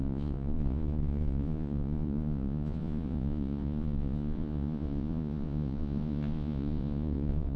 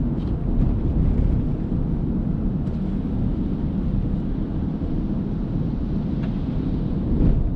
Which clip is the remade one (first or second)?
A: first